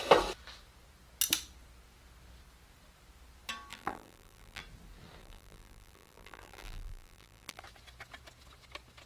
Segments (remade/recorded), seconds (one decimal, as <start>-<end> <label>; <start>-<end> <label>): 0.0-3.7 recorded; 3.7-4.6 remade; 4.6-5.2 recorded; 5.2-7.6 remade; 7.6-9.1 recorded